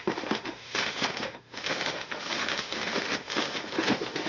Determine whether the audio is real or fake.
fake